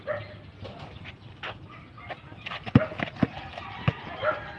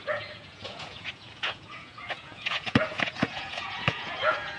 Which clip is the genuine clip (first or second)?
first